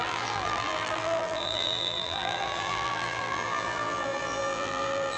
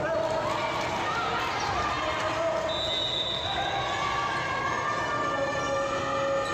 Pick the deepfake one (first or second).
first